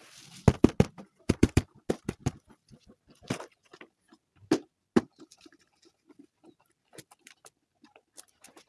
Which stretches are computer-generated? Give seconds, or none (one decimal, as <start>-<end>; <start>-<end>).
1.0-2.9